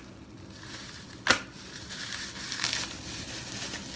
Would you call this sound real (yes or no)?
yes